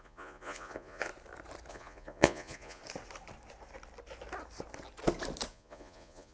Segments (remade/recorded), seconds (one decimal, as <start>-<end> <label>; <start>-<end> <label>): 0.0-1.1 remade; 1.1-1.7 recorded; 1.7-2.8 remade; 2.8-5.5 recorded; 5.5-6.3 remade